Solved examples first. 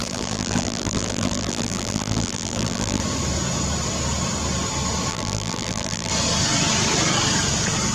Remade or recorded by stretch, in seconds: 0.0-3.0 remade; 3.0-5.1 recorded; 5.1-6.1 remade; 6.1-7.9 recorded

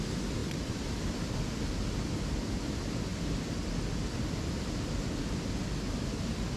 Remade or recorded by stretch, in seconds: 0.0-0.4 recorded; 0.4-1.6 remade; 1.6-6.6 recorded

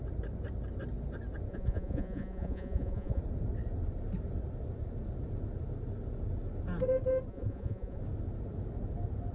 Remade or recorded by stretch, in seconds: 0.0-1.5 recorded; 1.5-3.2 remade; 3.2-7.3 recorded; 7.3-8.0 remade; 8.0-9.3 recorded

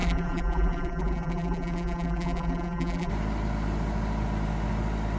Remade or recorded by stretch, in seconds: 0.0-3.1 remade; 3.1-5.2 recorded

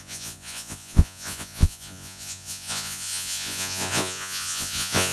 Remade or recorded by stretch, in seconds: 0.0-5.1 remade

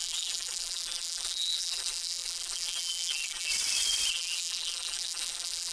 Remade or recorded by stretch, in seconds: 0.0-3.5 remade; 3.5-4.1 recorded; 4.1-5.7 remade